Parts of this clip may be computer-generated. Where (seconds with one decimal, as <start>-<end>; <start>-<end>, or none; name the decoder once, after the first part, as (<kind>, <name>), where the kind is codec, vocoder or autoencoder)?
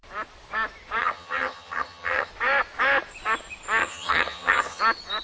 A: 1.0-2.3 (vocoder, HiFi-GAN); 3.8-4.8